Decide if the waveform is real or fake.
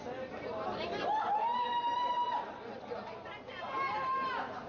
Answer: real